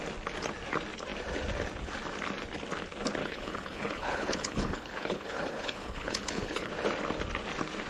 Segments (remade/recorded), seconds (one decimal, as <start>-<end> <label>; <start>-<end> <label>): 0.0-3.2 recorded; 3.2-6.7 remade; 6.7-7.9 recorded